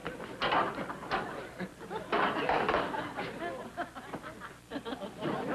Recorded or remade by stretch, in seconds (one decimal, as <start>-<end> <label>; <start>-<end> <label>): 0.0-5.5 recorded